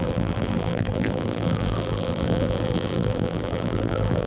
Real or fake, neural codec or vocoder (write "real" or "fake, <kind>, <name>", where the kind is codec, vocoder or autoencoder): fake, vocoder, BigVGAN v2